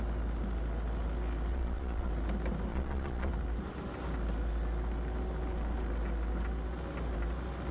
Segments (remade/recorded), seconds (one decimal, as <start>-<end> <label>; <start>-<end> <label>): 0.0-1.5 recorded; 1.5-2.1 remade; 2.1-2.7 recorded; 2.7-3.3 remade; 3.3-7.7 recorded